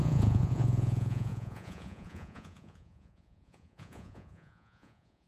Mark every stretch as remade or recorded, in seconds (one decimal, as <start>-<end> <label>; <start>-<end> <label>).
0.0-5.3 remade